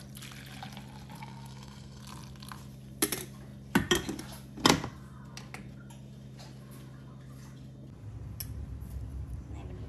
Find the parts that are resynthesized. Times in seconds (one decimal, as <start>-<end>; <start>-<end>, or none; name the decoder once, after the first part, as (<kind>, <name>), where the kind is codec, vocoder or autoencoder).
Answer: 1.2-2.0 (codec, SNAC)